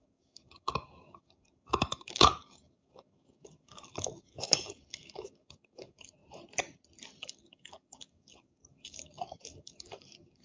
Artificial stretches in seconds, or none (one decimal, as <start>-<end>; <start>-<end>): 0.0-6.2; 7.2-10.4